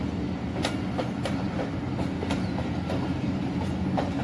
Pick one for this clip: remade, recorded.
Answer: recorded